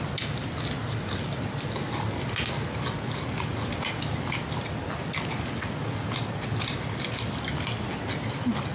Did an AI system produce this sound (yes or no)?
no